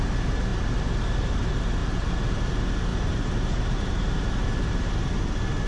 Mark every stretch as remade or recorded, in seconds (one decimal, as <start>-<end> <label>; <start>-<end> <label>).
0.0-1.8 recorded; 1.8-2.4 remade; 2.4-2.9 recorded; 2.9-4.8 remade; 4.8-5.7 recorded

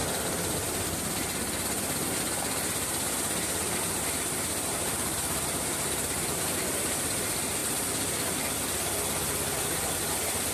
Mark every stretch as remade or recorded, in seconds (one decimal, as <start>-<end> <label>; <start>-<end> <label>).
0.0-3.8 recorded; 3.8-7.6 remade; 7.6-10.1 recorded; 10.1-10.5 remade